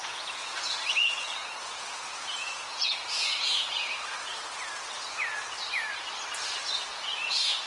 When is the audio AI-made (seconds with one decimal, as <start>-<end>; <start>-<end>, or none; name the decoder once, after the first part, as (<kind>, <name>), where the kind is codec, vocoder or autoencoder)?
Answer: 0.0-4.3 (vocoder, Vocos); 6.9-7.7